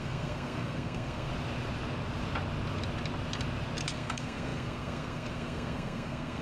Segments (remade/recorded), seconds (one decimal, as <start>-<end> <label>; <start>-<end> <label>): 0.0-1.3 remade; 1.3-3.9 recorded; 3.9-6.4 remade